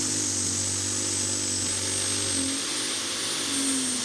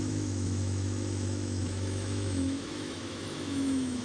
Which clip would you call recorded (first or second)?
first